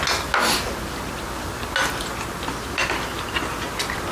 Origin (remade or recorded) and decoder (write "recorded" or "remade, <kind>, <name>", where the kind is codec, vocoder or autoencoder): recorded